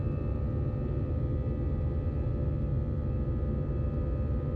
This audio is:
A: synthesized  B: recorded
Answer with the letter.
B